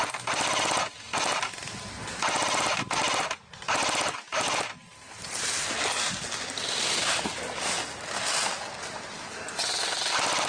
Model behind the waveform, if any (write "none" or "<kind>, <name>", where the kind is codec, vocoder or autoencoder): none